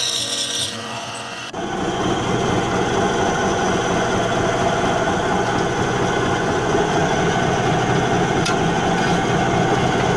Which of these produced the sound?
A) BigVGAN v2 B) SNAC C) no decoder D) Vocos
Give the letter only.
D